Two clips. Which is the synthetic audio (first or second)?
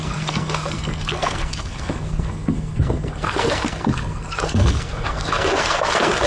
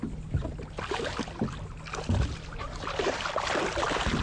first